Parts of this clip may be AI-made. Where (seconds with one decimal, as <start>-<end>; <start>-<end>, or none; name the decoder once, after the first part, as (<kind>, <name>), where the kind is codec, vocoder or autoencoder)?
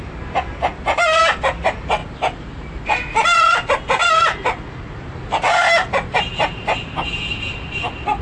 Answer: 0.0-0.7 (vocoder, BigVGAN v2); 1.2-2.0; 2.6-4.0; 7.3-8.2